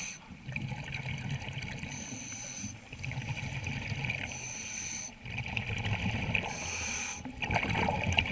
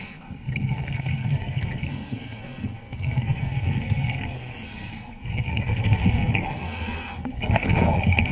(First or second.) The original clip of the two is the first